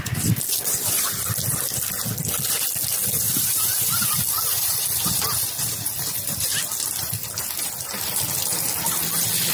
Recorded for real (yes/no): yes